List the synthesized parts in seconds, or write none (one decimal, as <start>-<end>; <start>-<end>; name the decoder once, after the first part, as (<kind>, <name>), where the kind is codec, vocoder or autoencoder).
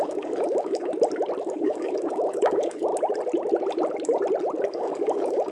0.0-0.9 (codec, DAC); 1.4-2.9; 4.6-5.5